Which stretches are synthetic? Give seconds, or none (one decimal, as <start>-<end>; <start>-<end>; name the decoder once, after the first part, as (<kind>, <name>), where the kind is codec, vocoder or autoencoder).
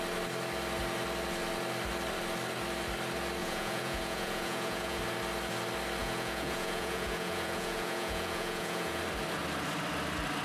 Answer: 3.4-5.0 (vocoder, Vocos); 6.0-9.0